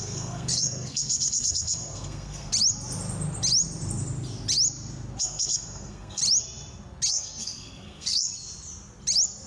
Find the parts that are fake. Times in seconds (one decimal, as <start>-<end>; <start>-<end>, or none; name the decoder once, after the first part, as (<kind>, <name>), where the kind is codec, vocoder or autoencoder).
0.0-2.5 (codec, SNAC); 5.2-6.2; 7.1-8.3

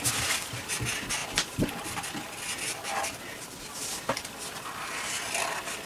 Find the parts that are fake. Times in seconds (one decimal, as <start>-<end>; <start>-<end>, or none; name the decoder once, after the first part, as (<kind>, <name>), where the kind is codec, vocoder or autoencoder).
none

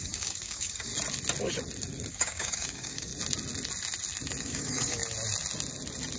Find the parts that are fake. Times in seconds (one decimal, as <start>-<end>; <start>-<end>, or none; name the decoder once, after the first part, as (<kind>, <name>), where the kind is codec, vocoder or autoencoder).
0.0-0.9 (codec, DAC); 2.1-3.1; 4.4-5.0

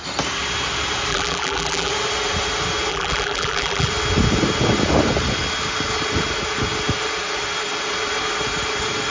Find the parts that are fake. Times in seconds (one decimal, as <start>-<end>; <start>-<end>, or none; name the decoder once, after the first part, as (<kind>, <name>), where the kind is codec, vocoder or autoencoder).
1.1-1.9 (vocoder, BigVGAN v2); 2.9-3.9

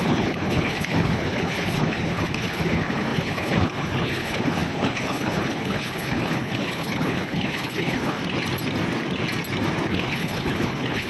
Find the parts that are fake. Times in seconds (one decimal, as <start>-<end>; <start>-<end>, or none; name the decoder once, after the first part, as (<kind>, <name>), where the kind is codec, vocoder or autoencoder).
0.0-8.2 (codec, HILCodec); 9.9-11.1

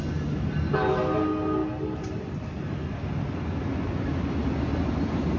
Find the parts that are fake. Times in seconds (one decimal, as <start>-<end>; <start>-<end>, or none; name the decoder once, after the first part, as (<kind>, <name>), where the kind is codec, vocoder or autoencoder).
none

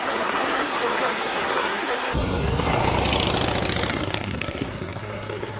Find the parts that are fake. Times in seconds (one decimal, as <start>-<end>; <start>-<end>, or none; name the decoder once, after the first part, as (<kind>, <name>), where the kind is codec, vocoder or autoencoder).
0.0-2.8 (codec, SNAC); 3.9-5.6

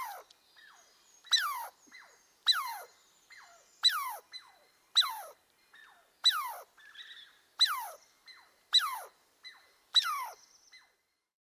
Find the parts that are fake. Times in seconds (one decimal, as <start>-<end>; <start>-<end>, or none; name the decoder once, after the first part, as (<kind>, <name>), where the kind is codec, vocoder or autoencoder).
none